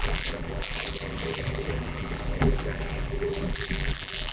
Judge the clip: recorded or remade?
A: remade